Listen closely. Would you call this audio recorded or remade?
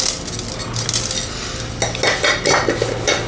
recorded